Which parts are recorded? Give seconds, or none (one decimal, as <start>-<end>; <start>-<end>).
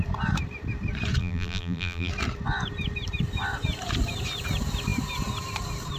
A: 0.0-1.2; 2.1-6.0